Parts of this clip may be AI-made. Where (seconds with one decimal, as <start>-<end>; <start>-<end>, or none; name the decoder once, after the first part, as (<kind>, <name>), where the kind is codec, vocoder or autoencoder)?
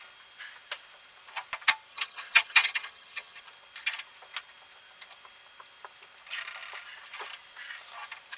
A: 1.9-3.4 (vocoder, HiFi-GAN)